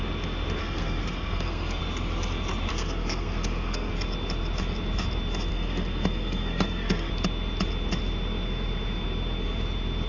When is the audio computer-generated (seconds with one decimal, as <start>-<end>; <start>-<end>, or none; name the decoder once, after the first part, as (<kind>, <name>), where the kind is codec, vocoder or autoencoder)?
0.6-1.8 (codec, SNAC); 2.7-3.9; 5.5-7.1